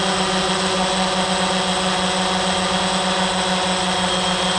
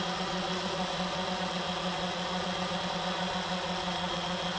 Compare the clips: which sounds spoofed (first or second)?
second